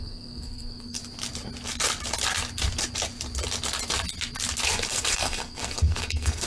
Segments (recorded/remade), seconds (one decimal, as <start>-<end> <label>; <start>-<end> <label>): 0.0-1.0 remade; 1.0-4.9 recorded; 4.9-6.5 remade